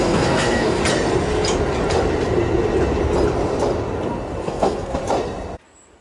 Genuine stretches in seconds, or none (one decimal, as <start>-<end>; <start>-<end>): 0.8-4.4; 5.0-6.0